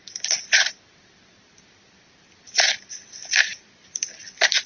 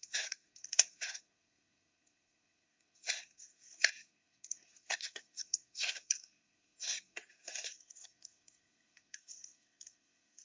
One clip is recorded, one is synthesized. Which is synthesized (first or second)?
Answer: second